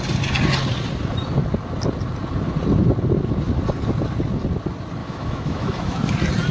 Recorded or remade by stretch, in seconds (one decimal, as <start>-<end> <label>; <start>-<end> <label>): 0.0-5.0 recorded; 5.0-6.1 remade; 6.1-6.5 recorded